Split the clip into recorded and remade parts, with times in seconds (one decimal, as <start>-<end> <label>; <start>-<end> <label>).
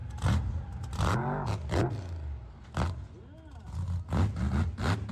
0.0-5.1 recorded